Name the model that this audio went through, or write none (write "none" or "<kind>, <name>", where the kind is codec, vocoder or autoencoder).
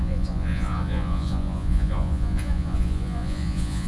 vocoder, Vocos